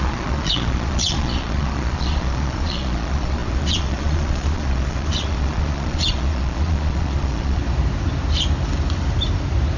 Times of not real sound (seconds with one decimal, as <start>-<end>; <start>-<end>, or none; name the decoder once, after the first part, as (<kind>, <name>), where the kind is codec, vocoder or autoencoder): 0.0-7.6 (vocoder, Vocos)